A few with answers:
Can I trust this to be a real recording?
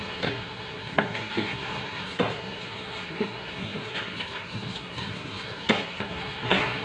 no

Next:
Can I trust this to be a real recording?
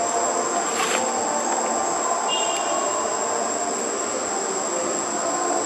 yes